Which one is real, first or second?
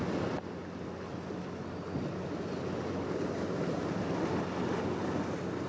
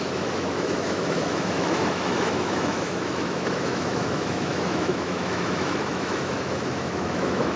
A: first